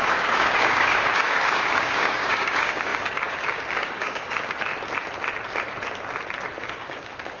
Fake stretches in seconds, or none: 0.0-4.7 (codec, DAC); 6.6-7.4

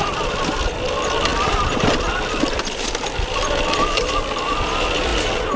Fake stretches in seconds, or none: 1.3-4.1 (vocoder, BigVGAN v2)

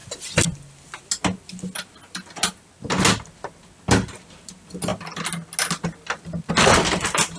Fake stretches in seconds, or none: none